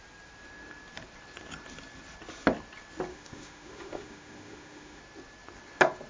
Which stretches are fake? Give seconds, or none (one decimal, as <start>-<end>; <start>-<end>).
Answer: 3.1-5.0